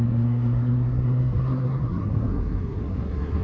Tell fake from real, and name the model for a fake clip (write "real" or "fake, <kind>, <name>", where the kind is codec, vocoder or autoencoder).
fake, codec, SNAC